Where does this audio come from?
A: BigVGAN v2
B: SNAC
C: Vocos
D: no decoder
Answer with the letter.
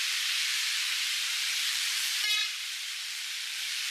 A